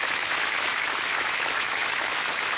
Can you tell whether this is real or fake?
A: fake